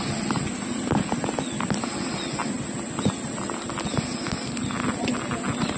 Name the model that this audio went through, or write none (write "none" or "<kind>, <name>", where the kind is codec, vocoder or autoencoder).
none